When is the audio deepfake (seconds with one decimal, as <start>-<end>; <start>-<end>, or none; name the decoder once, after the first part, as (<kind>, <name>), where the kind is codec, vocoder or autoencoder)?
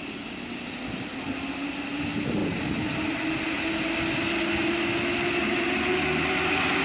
none